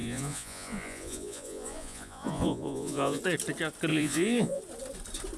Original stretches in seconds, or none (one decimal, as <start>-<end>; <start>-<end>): 3.2-3.9; 4.6-5.4